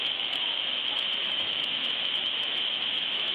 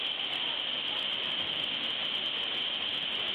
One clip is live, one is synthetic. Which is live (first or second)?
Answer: second